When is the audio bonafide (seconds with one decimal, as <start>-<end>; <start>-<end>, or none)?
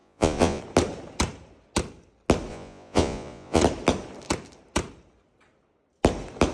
0.6-2.5; 3.6-6.5